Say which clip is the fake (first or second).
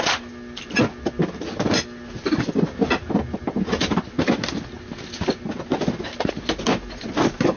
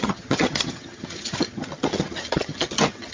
second